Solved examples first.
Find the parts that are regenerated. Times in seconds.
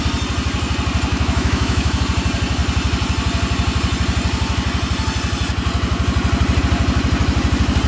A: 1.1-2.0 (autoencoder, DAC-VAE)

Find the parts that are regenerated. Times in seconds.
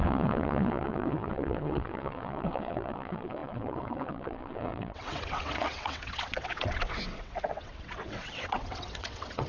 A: 0.0-9.5 (vocoder, WaveNeXt)